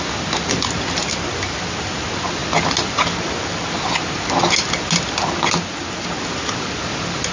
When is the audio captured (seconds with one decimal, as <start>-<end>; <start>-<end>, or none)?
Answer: 0.0-7.3